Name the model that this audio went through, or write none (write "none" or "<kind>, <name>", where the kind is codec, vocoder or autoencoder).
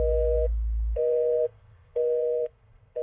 codec, SNAC